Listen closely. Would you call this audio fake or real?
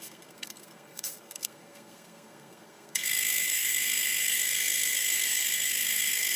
fake